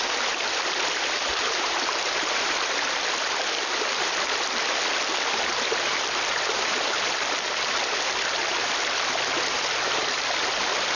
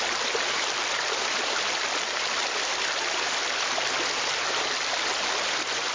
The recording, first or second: second